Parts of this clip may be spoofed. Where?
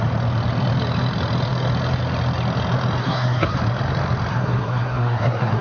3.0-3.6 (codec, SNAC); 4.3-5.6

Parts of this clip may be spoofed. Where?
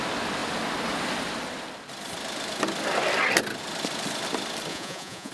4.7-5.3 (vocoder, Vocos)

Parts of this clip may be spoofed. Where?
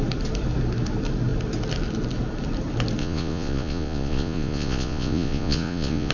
3.0-6.1 (vocoder, Vocos)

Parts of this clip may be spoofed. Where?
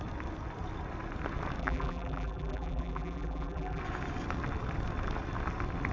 1.6-3.8 (vocoder, BigVGAN v2)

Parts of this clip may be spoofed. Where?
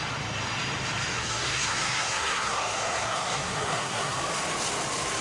1.1-4.2 (codec, SNAC)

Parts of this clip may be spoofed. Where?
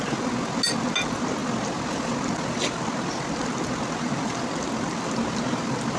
none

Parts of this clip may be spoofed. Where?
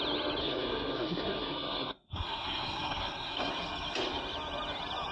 0.4-3.5 (codec, SNAC)